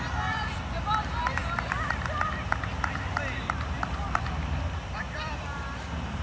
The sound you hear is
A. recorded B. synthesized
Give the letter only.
B